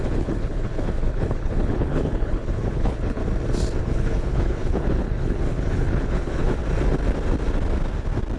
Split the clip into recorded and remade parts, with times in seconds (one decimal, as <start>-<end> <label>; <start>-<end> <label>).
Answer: 0.0-3.2 remade; 3.2-3.8 recorded; 3.8-6.6 remade; 6.6-8.4 recorded